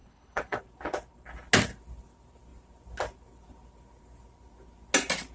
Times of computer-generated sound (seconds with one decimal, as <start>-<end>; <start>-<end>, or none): 0.0-0.6